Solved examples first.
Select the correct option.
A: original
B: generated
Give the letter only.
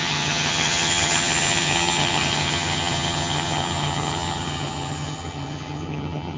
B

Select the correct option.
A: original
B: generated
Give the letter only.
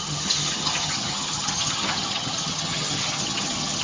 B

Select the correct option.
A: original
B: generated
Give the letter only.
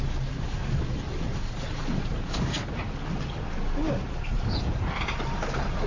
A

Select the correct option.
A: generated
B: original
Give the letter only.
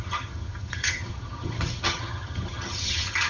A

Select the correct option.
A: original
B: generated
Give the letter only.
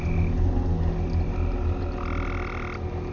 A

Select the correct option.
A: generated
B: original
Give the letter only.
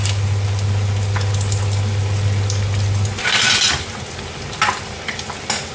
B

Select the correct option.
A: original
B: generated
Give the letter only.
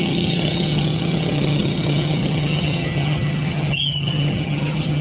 B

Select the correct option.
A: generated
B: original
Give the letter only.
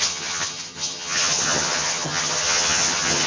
A